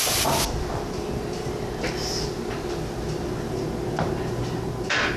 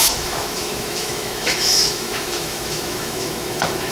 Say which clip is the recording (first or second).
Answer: first